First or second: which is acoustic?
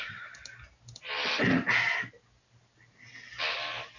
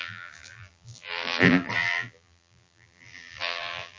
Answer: first